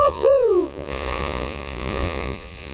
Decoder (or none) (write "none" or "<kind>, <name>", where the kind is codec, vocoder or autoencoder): vocoder, Vocos